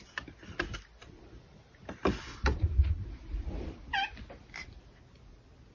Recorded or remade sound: recorded